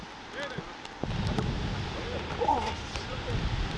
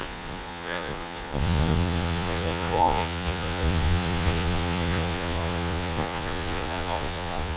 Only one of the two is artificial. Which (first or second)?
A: second